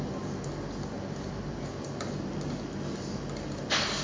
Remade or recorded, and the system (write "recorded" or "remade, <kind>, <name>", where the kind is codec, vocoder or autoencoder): recorded